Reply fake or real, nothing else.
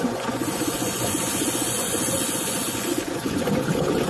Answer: fake